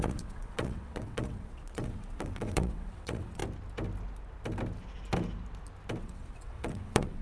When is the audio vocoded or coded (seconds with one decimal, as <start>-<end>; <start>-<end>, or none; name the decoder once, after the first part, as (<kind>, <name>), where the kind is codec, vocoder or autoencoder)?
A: 0.0-3.4 (vocoder, WaveNeXt); 6.0-7.2